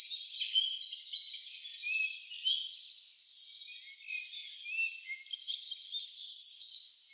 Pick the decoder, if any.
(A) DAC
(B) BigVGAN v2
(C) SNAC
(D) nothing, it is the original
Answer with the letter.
D